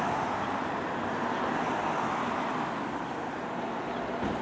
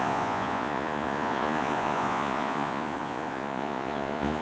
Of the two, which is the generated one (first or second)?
second